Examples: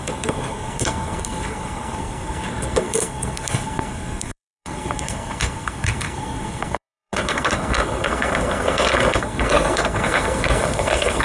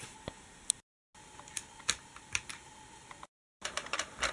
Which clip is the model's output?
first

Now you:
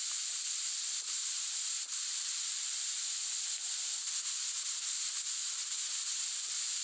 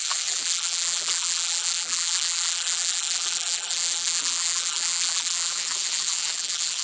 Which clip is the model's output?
second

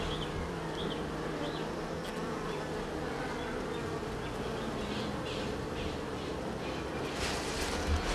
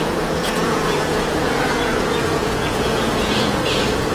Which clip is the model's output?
second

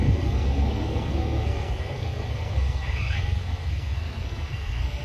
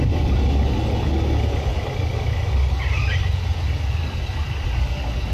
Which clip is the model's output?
first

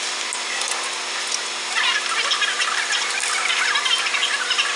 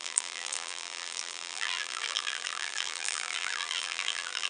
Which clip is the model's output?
second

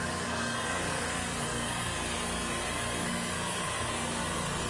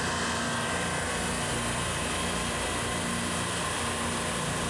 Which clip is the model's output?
first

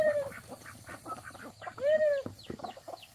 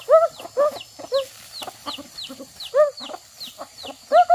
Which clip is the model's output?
first